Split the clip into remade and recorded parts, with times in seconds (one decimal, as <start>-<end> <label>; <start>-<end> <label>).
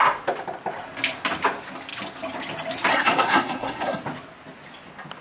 0.0-2.9 recorded; 2.9-4.0 remade; 4.0-5.2 recorded